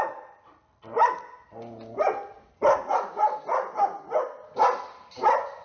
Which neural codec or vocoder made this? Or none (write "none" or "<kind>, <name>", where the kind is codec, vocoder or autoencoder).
none